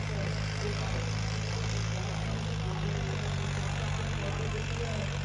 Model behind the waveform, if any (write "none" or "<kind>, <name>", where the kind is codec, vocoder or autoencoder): none